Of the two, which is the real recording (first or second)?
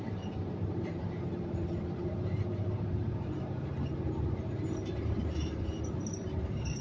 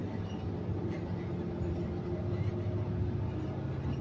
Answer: second